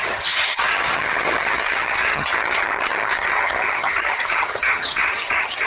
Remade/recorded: remade